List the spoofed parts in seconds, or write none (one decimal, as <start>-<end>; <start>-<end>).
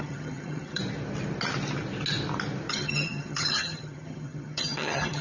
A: 0.0-0.8; 2.7-5.2